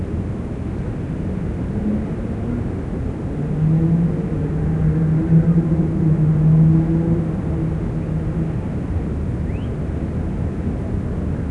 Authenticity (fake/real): real